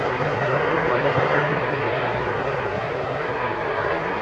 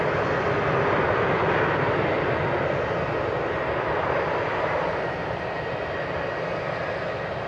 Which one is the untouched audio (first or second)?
second